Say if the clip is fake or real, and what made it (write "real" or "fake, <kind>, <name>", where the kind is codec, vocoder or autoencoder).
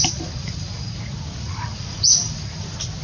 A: real